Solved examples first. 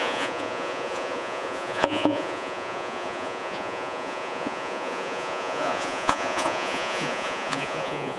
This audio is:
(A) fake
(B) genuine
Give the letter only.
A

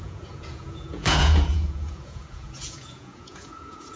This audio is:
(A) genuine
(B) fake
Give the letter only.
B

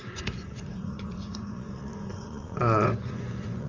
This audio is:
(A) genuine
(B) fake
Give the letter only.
B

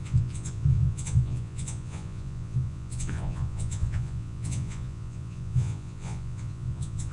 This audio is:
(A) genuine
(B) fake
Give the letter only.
B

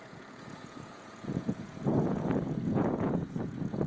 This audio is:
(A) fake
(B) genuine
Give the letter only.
A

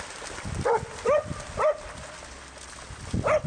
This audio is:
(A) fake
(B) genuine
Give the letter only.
B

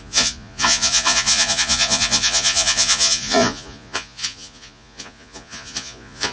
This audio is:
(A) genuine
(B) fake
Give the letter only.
B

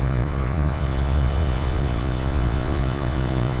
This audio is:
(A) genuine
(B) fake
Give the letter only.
B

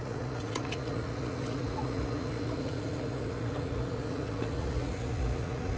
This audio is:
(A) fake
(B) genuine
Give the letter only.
A